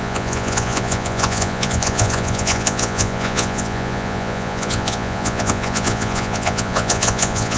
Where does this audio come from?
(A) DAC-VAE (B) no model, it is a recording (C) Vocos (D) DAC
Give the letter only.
C